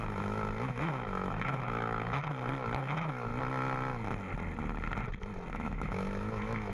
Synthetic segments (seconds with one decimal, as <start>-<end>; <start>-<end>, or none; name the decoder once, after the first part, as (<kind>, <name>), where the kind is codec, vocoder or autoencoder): 0.0-2.2 (autoencoder, DAC-VAE); 2.8-3.3; 5.5-6.7